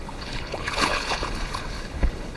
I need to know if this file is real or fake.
fake